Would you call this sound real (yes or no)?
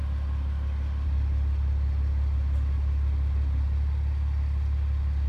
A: yes